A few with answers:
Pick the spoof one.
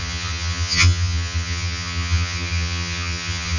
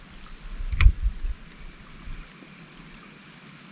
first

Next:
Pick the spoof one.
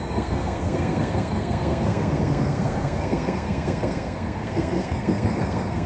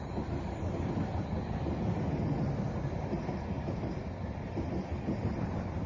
first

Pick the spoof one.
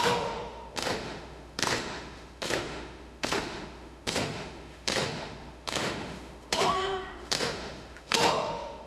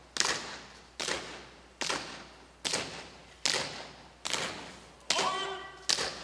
first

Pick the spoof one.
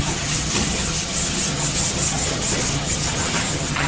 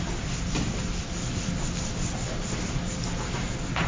first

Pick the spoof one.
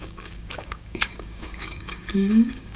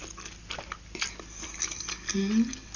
first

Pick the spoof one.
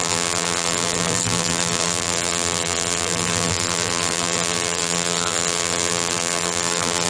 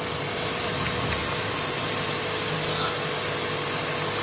first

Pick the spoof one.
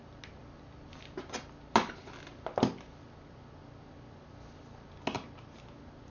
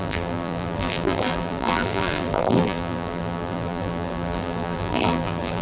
second